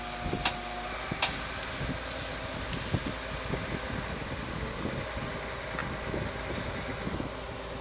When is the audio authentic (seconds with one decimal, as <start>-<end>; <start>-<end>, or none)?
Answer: 0.0-7.8